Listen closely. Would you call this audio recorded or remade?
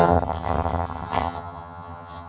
remade